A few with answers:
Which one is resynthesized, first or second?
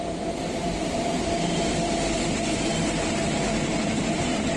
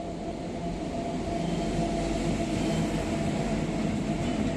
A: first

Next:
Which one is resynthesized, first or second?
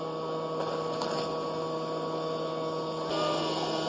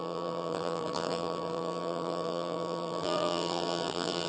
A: second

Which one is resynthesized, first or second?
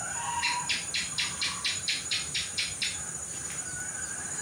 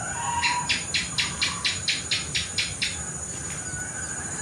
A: first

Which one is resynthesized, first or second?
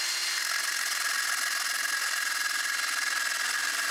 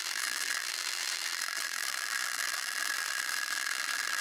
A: second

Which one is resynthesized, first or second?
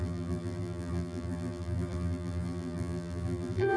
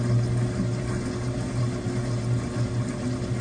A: first